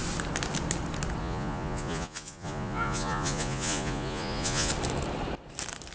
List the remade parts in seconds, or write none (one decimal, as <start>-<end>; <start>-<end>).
1.2-4.7